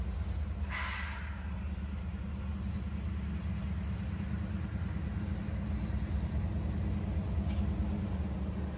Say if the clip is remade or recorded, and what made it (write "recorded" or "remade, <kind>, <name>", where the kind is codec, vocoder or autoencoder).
recorded